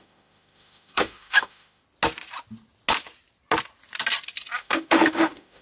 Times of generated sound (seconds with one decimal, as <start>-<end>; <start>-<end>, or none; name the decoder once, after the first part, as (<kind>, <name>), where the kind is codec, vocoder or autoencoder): 0.0-1.8 (autoencoder, DAC-VAE); 4.6-5.6